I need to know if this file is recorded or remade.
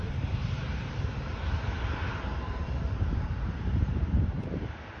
remade